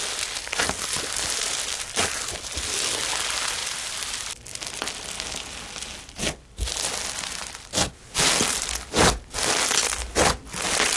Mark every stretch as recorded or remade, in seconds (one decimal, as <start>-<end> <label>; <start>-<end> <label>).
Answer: 0.0-11.0 recorded